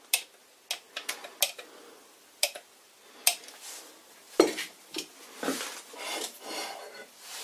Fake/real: real